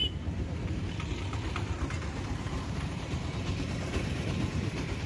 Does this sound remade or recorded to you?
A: remade